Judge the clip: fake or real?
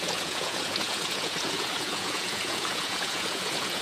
fake